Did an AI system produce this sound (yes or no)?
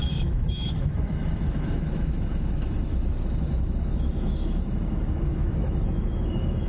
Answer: yes